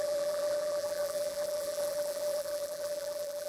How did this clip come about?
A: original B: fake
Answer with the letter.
B